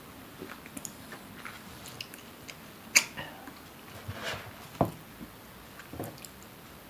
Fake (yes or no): no